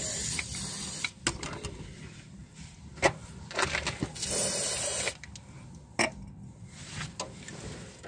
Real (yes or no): yes